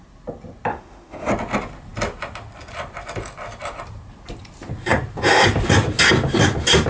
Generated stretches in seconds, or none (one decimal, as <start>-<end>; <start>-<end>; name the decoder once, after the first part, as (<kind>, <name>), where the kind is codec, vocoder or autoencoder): 0.7-1.3 (autoencoder, DAC-VAE)